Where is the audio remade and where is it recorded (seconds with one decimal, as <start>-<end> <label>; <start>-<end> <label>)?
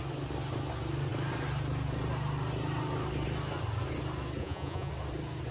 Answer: 0.0-4.4 recorded; 4.4-4.9 remade; 4.9-5.5 recorded